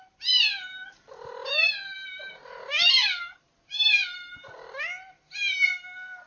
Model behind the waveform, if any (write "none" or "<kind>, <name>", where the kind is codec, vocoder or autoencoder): none